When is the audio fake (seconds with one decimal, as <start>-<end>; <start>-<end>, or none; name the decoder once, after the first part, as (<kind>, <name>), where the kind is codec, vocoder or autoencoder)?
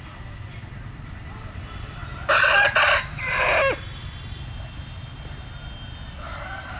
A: 0.0-2.0 (vocoder, BigVGAN v2); 6.1-6.8